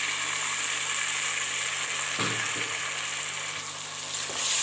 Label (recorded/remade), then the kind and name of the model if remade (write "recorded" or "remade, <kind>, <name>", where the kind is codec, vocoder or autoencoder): recorded